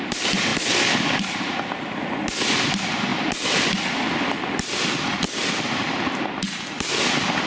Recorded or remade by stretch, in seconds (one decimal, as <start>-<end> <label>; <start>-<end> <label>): 0.0-7.5 recorded